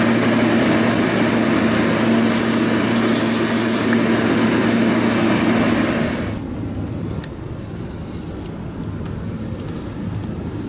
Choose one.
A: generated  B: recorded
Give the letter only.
B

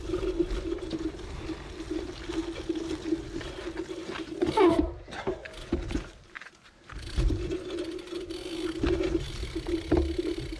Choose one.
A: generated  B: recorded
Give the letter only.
B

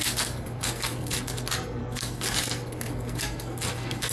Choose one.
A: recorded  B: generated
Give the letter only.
B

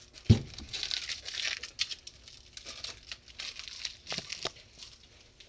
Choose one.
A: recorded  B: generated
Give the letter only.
A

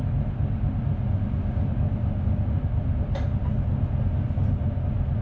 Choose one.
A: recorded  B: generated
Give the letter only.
A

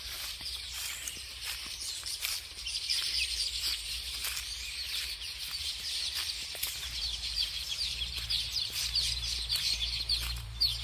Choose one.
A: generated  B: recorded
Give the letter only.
A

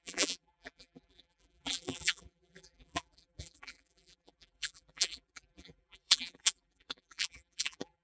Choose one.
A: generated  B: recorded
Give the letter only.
A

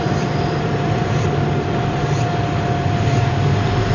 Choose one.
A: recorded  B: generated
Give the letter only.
B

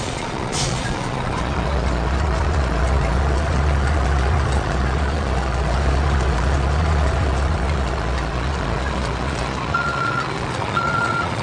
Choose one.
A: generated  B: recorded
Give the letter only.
A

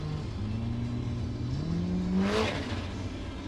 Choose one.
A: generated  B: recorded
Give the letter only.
B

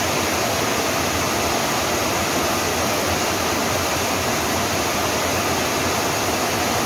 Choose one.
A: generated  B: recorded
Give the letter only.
B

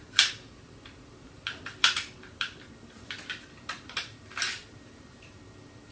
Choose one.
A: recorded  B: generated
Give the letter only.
A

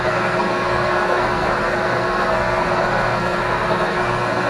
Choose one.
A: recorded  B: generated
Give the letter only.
B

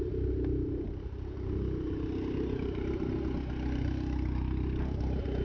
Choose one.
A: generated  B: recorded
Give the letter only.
B